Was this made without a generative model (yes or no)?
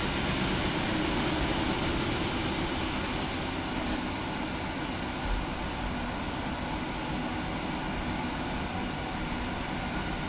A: yes